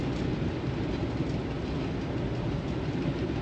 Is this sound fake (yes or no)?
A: no